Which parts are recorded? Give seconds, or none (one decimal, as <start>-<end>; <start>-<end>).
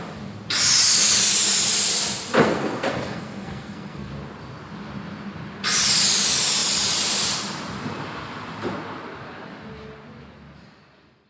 0.0-2.4; 4.1-11.3